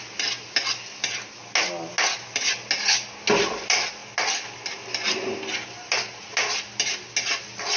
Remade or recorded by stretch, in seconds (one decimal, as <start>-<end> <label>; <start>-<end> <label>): 0.0-7.8 recorded